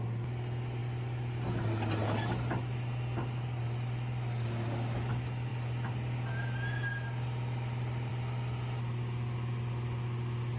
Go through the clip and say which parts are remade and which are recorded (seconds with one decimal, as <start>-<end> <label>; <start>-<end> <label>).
0.0-10.6 recorded